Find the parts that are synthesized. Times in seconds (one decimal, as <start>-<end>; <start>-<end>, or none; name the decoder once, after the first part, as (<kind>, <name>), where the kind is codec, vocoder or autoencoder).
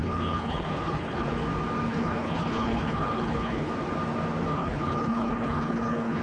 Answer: 0.0-1.3 (codec, HILCodec); 1.9-3.7; 4.5-6.2